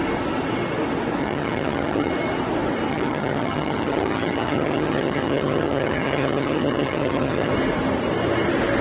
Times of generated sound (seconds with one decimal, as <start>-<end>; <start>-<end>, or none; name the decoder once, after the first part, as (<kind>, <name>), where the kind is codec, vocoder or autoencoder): 1.2-2.1 (vocoder, HiFi-GAN); 2.9-7.5